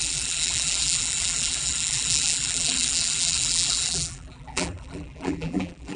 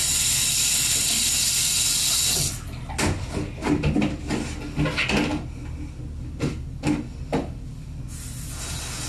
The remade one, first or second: first